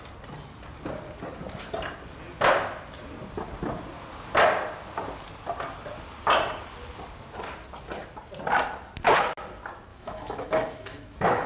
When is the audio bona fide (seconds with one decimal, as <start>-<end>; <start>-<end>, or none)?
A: 0.0-9.9